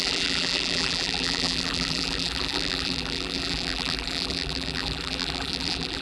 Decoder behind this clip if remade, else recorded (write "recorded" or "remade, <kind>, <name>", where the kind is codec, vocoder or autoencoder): remade, vocoder, BigVGAN v2